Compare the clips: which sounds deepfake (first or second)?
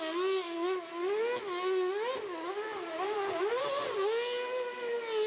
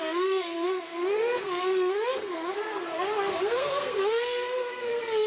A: second